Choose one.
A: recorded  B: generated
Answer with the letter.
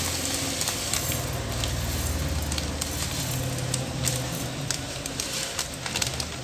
A